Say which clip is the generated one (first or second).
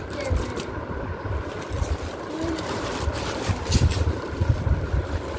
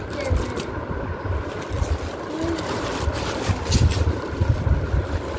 first